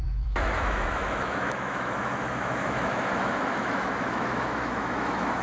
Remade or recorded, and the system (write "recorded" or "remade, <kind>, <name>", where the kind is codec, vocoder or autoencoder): remade, autoencoder, DAC-VAE